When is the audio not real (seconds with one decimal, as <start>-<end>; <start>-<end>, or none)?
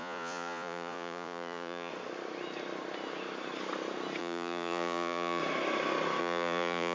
0.0-1.9; 4.2-5.4; 6.2-6.9